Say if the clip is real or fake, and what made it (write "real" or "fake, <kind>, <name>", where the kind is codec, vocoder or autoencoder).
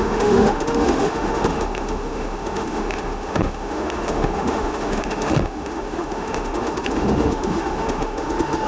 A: fake, autoencoder, DAC-VAE